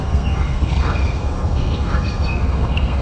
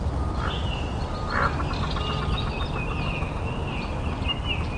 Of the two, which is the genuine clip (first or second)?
second